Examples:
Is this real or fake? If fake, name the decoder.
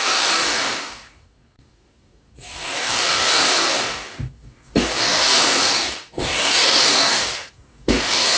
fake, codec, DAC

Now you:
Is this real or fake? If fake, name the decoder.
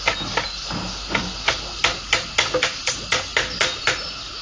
real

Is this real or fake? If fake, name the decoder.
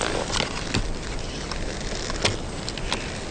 real